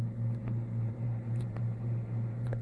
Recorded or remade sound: remade